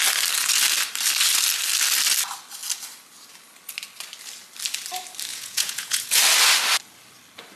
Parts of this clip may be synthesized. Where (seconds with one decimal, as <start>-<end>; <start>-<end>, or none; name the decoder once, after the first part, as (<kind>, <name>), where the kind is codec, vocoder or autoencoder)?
5.3-6.2 (vocoder, Vocos)